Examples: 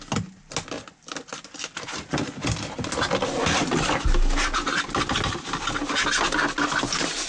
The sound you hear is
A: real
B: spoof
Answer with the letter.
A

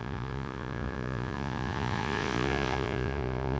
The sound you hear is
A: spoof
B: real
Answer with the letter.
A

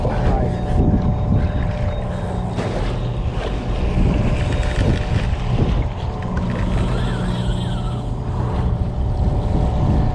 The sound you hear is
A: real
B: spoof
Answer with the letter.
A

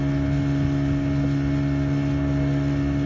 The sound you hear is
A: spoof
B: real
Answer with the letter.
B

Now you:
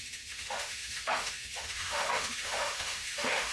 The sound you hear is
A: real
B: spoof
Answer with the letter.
B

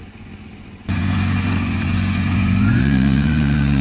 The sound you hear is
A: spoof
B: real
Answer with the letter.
A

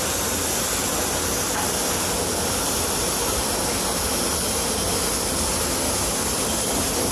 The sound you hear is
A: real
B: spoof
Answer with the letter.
A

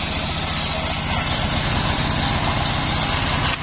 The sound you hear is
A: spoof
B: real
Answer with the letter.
B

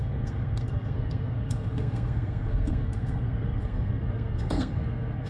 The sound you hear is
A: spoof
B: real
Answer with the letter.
A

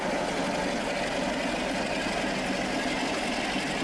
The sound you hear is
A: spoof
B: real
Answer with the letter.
B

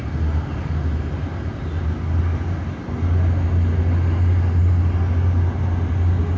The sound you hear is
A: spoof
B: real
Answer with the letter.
B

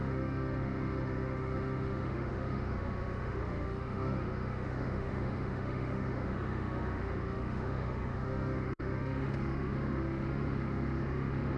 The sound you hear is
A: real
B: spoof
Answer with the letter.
B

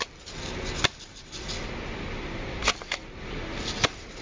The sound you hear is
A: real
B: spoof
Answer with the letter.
A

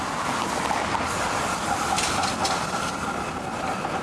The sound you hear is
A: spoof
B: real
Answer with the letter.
B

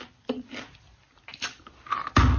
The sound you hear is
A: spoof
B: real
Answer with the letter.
B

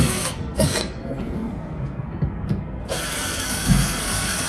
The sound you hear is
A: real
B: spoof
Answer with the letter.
B